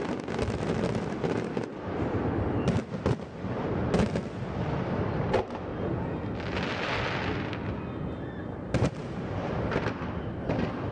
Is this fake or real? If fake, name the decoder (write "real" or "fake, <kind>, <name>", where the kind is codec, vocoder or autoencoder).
real